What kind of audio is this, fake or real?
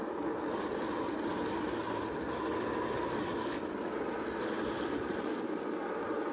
real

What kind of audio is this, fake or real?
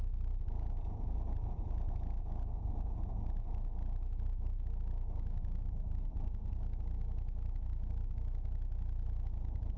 real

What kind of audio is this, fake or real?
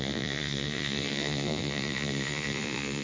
fake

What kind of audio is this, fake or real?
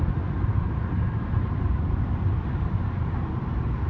fake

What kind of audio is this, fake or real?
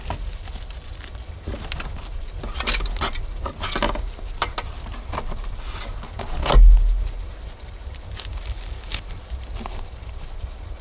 real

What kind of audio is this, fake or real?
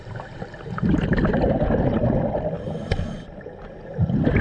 real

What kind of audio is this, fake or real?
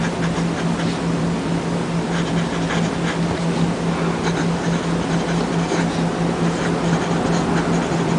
real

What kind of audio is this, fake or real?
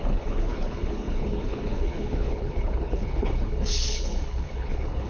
fake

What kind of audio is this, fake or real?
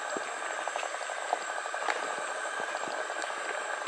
real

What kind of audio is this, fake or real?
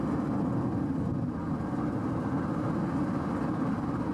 real